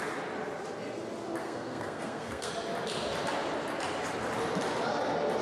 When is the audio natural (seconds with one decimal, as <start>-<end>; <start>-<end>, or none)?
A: 0.0-1.4; 2.5-5.4